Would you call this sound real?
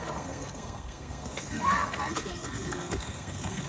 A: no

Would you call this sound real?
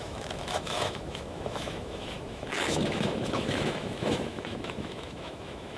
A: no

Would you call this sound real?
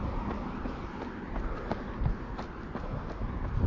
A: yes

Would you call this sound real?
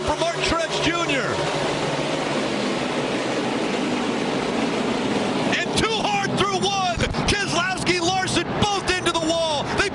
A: yes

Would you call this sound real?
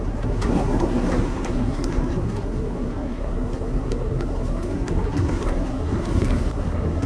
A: no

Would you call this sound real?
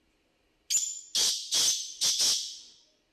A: yes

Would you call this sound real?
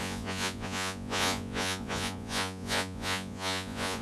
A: no